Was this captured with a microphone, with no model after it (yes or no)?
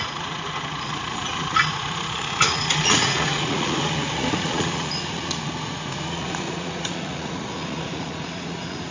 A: no